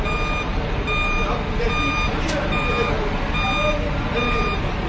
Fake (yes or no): no